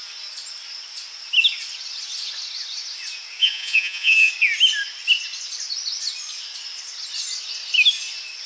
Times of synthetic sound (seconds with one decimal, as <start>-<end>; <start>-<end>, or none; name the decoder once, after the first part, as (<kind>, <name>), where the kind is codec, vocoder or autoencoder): 3.4-4.3 (vocoder, Vocos)